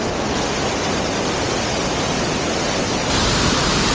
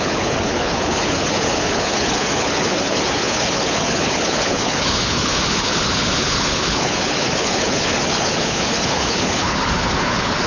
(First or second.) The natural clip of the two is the first